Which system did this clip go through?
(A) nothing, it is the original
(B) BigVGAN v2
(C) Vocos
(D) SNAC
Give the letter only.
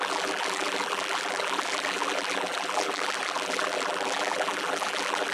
B